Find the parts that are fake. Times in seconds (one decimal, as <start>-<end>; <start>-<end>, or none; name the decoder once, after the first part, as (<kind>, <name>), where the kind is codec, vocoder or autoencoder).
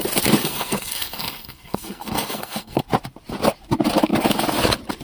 0.4-2.8 (codec, SNAC)